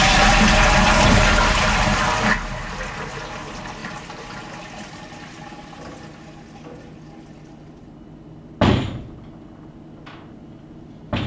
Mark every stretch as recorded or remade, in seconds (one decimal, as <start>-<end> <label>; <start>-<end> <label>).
0.0-11.3 recorded